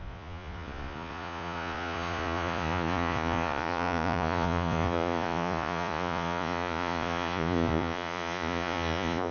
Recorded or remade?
remade